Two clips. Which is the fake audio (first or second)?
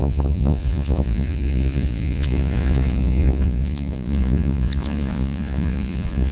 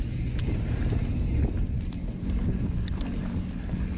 first